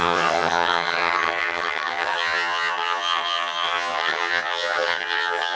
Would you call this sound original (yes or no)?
no